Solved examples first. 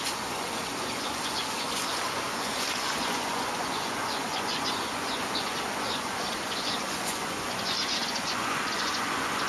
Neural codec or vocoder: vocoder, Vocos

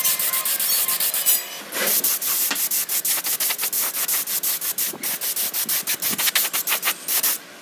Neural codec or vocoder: none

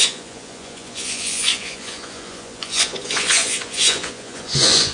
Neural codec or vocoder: vocoder, Vocos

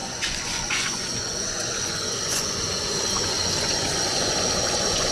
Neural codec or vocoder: vocoder, Vocos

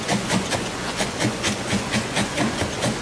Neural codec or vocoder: vocoder, Vocos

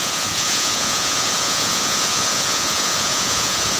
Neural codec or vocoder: vocoder, Vocos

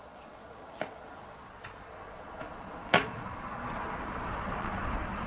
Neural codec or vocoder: vocoder, Vocos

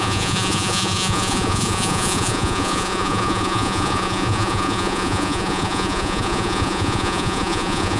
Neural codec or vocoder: vocoder, Vocos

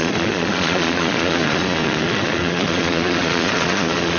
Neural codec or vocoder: vocoder, Vocos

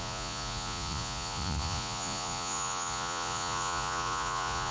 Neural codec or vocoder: vocoder, Vocos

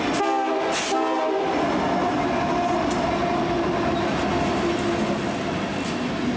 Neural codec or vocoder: none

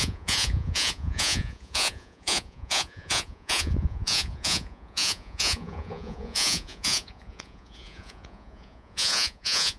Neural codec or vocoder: vocoder, Vocos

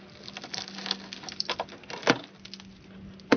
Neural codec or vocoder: none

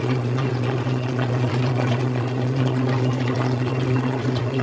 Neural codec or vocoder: vocoder, Vocos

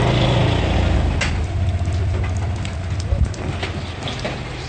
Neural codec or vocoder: none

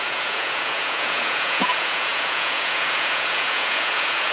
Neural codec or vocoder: vocoder, Vocos